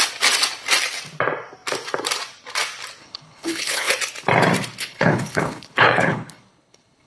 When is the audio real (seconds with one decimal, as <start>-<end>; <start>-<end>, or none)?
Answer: 0.0-3.0; 3.9-4.8